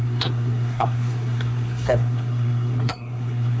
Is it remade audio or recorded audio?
remade